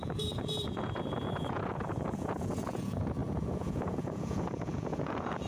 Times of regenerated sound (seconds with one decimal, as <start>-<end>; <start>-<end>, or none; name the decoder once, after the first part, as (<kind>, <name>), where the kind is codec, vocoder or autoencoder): 0.0-5.5 (vocoder, Vocos)